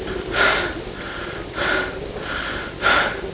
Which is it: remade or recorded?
recorded